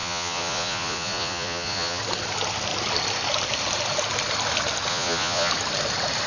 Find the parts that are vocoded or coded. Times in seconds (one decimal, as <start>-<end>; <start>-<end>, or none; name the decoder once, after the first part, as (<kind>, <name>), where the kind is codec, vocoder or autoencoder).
0.0-2.0 (vocoder, Vocos); 4.9-5.5